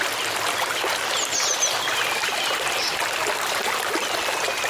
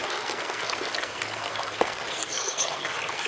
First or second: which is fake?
second